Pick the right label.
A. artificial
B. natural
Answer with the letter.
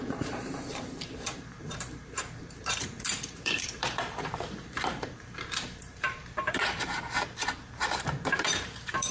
A